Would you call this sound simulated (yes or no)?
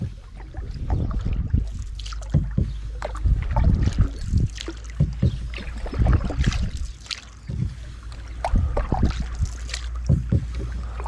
no